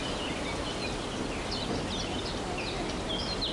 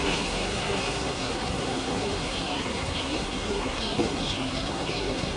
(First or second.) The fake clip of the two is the second